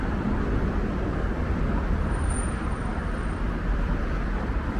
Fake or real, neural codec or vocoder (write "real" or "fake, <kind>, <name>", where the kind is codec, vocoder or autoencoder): fake, vocoder, BigVGAN v2